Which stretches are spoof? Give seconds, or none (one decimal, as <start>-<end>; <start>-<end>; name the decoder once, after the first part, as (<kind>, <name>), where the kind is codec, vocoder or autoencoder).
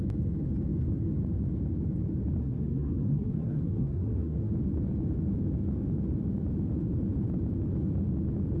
2.4-4.5 (codec, SNAC)